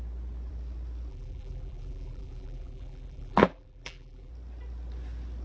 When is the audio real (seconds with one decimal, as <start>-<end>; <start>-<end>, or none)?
0.0-1.1; 4.3-5.4